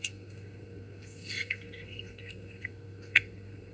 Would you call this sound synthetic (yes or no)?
yes